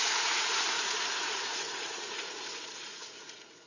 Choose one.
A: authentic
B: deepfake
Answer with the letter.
B